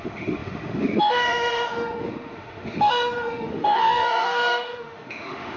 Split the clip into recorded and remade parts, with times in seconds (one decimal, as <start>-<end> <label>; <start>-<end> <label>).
0.0-5.6 remade